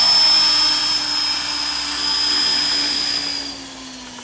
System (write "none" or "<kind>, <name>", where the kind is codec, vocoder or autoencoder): none